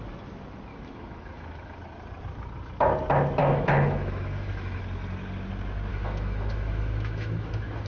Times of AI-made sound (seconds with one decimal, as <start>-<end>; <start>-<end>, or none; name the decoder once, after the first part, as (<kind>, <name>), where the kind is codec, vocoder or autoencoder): 0.7-1.8 (autoencoder, DAC-VAE); 3.4-4.8; 5.9-7.9